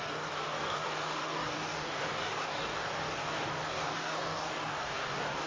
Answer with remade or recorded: remade